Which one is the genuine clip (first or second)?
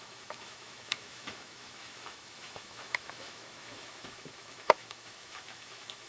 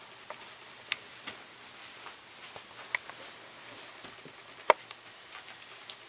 second